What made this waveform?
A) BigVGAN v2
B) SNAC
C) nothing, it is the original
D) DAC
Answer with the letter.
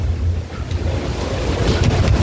C